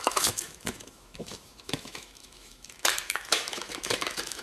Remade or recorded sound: remade